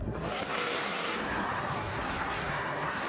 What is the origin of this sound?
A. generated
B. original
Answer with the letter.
A